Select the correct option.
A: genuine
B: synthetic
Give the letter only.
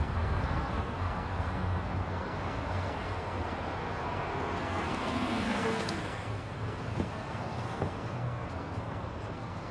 B